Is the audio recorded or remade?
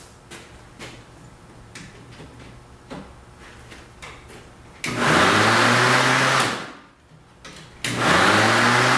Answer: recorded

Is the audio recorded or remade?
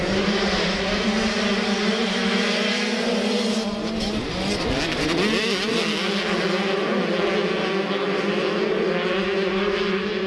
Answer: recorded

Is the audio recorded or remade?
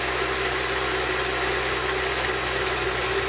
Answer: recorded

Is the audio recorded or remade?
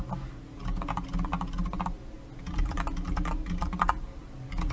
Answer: recorded